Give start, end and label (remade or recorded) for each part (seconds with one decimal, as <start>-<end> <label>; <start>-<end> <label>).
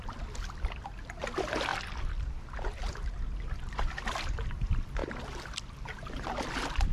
0.0-6.9 recorded